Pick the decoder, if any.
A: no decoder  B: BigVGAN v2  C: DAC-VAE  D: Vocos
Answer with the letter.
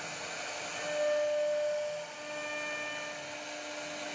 A